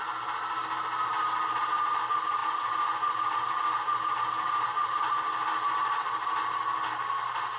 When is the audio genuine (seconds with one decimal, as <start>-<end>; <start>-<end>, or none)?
0.0-7.6